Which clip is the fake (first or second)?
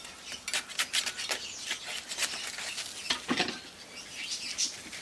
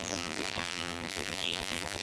second